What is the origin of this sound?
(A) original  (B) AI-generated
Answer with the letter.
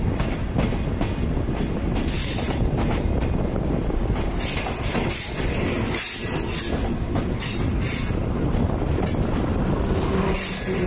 A